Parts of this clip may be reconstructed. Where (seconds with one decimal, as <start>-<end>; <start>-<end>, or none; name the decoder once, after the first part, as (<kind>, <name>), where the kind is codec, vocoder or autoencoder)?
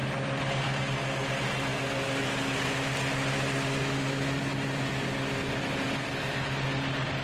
none